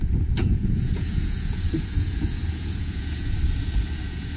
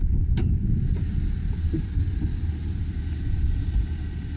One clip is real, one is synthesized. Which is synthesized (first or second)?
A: first